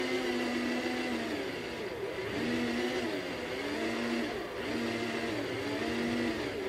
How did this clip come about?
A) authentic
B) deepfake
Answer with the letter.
A